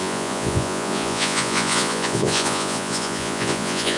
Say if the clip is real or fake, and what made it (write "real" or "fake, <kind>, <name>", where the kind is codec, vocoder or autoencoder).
fake, vocoder, Vocos